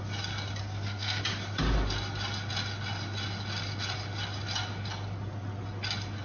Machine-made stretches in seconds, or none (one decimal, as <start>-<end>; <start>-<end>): 0.6-1.2

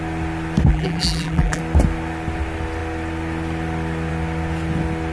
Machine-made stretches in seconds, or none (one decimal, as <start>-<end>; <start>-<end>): 0.7-1.6